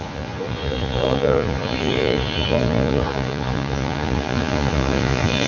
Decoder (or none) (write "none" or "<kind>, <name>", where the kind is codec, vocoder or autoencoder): vocoder, Vocos